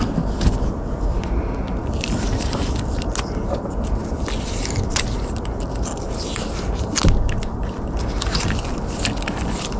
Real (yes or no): yes